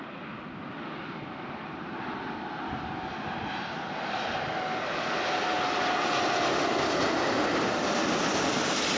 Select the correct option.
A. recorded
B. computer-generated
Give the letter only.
A